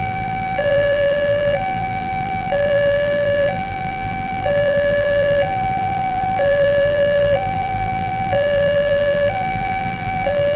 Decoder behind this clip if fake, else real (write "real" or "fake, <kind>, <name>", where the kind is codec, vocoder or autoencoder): fake, vocoder, BigVGAN v2